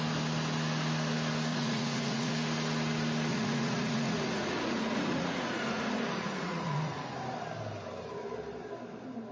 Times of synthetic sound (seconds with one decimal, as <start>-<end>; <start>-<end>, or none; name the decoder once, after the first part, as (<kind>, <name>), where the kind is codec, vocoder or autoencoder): 1.5-2.3 (vocoder, Vocos); 3.3-7.1